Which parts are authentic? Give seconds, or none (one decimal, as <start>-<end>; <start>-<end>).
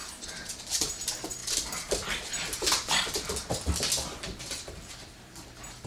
0.0-0.6